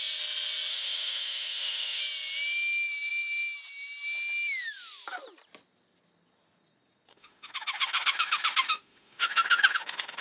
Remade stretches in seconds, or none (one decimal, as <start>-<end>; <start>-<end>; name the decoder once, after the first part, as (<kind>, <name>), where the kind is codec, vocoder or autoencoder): 0.7-2.0 (autoencoder, DAC-VAE); 7.1-10.2